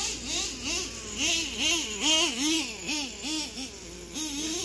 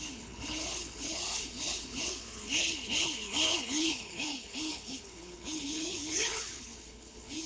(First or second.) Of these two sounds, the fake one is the second